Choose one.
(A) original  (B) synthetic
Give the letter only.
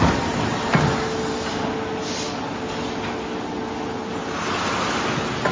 A